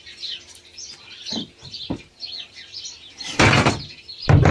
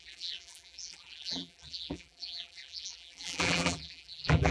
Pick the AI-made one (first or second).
second